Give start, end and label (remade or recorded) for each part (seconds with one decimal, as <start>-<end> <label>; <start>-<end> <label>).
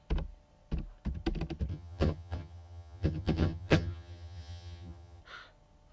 0.0-1.7 recorded; 1.7-5.2 remade; 5.2-5.9 recorded